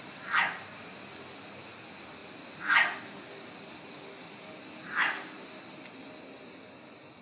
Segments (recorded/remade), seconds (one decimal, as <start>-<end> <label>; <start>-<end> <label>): 0.0-7.2 recorded